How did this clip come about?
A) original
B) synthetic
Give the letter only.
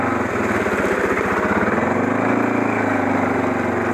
A